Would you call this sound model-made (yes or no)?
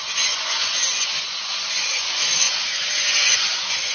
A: yes